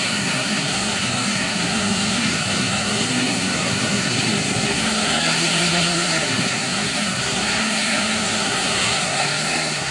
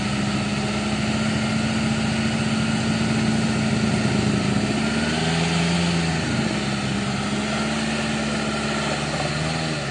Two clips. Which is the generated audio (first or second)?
first